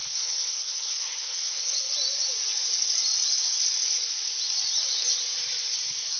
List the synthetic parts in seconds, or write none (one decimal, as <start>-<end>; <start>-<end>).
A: 0.0-1.8